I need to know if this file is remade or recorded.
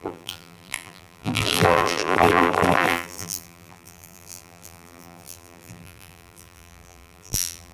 remade